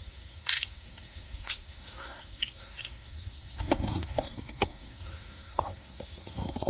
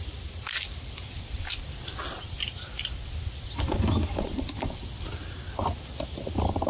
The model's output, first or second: first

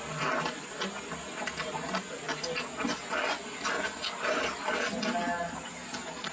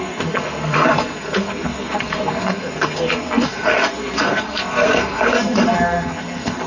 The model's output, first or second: second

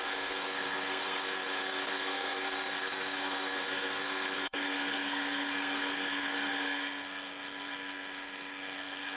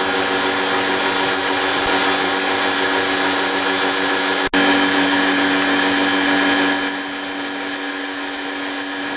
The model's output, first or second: first